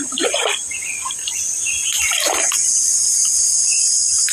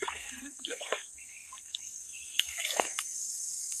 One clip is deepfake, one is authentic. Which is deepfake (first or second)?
second